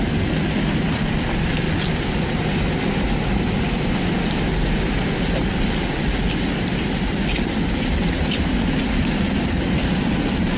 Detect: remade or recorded recorded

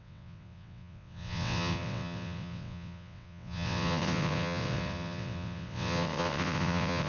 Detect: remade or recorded remade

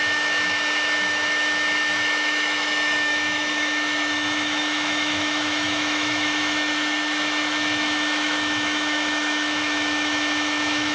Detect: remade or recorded remade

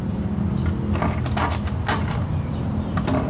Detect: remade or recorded recorded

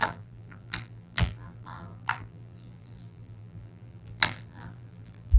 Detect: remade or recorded remade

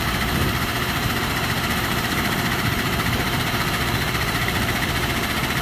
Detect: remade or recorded remade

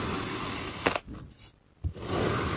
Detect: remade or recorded recorded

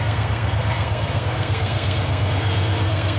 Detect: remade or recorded remade